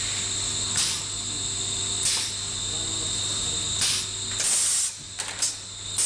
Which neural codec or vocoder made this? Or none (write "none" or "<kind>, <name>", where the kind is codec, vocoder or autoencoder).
none